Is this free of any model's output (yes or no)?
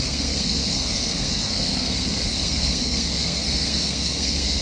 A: no